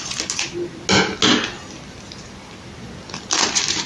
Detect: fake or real real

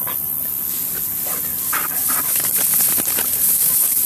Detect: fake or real real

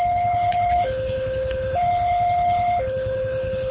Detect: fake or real fake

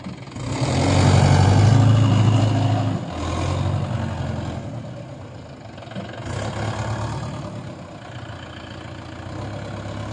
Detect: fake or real real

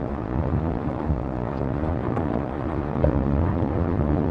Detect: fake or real fake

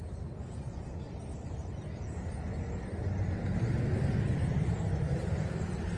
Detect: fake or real real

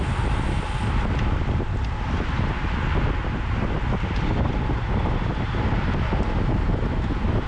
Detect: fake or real real